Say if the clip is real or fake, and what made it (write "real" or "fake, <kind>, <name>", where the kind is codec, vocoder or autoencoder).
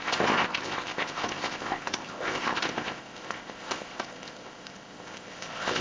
fake, codec, ZipCodec